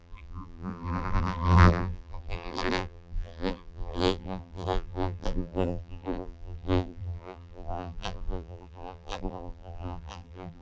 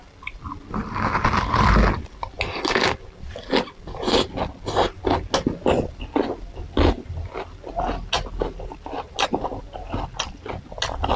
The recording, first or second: second